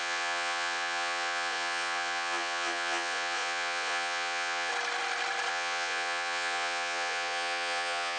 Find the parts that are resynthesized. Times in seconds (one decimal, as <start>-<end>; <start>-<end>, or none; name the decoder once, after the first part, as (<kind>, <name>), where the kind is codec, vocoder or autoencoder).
0.0-4.7 (vocoder, Vocos); 5.5-8.2